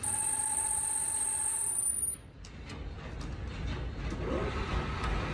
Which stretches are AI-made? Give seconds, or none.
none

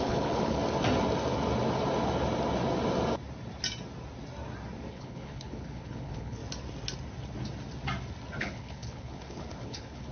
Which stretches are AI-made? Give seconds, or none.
0.0-0.6 (codec, HILCodec); 4.9-6.4; 8.4-10.1

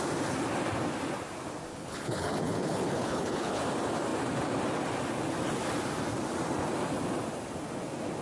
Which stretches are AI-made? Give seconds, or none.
1.7-3.6 (codec, HILCodec)

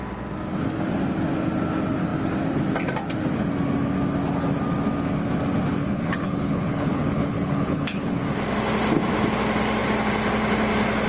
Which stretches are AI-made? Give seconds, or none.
5.7-8.2 (codec, HILCodec)

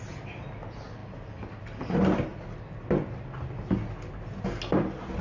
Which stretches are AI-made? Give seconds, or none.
none

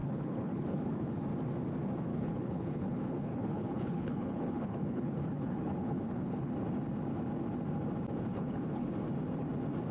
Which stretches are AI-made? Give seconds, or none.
0.0-1.2 (codec, HILCodec); 2.1-6.5; 8.3-8.9

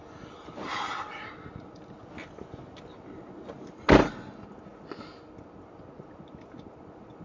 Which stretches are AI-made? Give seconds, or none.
none